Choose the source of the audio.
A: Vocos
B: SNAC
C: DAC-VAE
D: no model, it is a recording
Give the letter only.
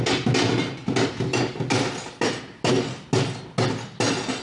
D